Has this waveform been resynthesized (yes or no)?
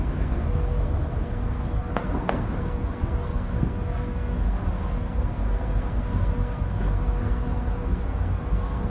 yes